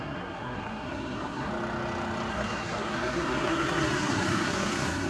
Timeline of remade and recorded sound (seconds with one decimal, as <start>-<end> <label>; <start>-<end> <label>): 0.0-1.5 remade; 1.5-2.3 recorded; 2.3-5.1 remade